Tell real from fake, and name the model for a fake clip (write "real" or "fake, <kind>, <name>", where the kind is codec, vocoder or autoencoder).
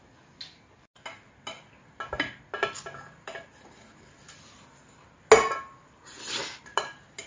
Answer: real